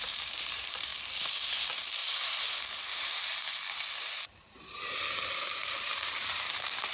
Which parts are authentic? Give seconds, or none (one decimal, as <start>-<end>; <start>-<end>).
0.9-1.5; 2.0-4.2